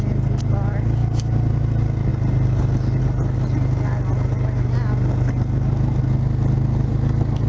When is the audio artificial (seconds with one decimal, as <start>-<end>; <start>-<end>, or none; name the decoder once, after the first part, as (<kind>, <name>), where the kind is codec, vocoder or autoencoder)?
none